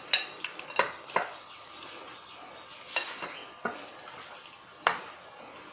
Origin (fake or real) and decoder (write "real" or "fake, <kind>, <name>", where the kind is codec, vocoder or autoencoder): real